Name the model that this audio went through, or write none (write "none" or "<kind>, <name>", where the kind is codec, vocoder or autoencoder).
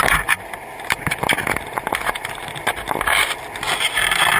none